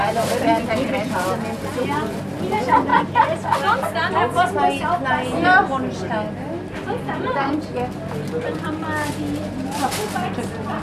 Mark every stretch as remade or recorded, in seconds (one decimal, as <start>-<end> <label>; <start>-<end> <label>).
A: 0.0-10.8 recorded